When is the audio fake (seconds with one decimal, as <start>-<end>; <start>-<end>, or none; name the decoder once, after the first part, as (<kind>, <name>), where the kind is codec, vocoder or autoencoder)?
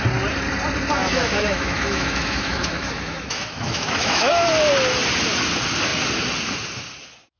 1.0-4.3 (autoencoder, DAC-VAE)